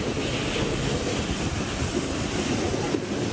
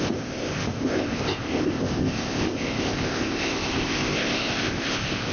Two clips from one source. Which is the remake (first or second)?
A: second